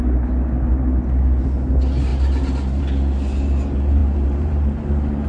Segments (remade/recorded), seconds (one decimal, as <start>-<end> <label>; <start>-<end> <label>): 0.0-4.0 recorded; 4.0-4.8 remade; 4.8-5.3 recorded